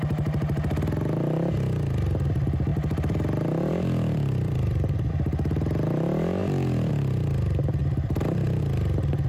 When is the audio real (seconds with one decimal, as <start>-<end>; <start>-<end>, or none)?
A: 0.0-2.7; 5.1-6.4; 6.9-7.8; 8.6-9.3

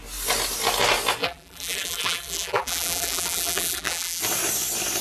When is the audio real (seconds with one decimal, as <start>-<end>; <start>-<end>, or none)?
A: 0.0-1.2; 4.2-5.0

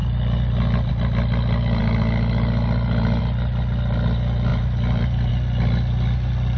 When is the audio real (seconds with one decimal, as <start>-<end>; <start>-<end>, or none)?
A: 0.0-4.5; 5.3-6.6

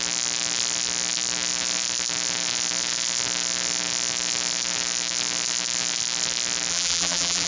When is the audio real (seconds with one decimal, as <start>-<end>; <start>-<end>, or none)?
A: 0.0-6.7

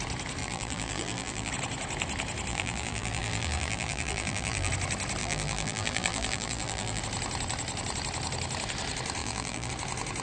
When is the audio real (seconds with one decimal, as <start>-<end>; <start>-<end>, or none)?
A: 0.0-0.4; 1.5-2.5; 4.7-5.2; 7.0-9.2; 9.7-10.2

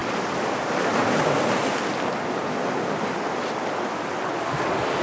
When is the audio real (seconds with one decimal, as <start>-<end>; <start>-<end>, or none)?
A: 1.1-2.4; 3.1-5.0